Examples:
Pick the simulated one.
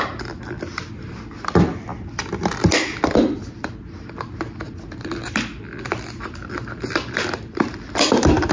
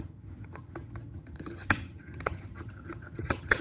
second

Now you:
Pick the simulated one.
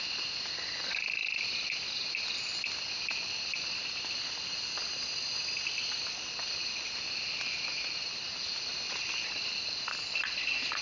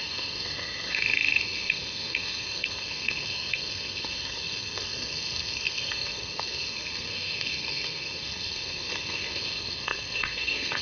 second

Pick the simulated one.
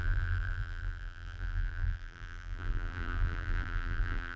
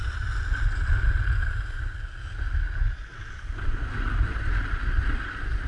first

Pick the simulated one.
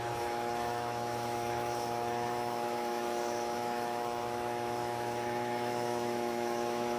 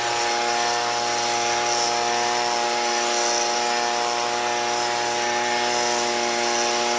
first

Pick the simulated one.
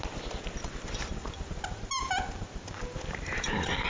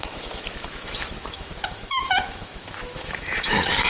second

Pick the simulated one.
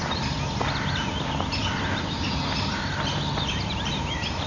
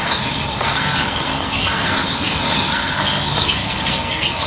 second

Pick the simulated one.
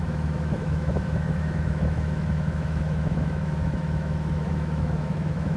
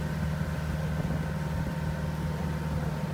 first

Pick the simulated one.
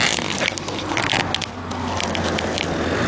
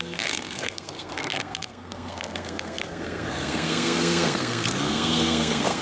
second